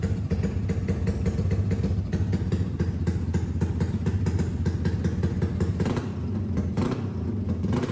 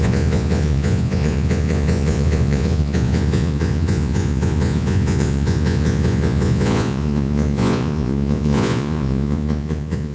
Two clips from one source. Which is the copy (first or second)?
second